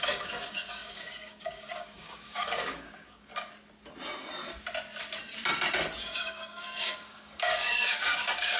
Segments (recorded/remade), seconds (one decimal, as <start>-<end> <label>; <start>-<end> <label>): 0.0-3.3 remade; 3.3-6.0 recorded; 6.0-8.6 remade